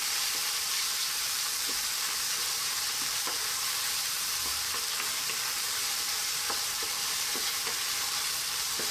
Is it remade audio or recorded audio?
remade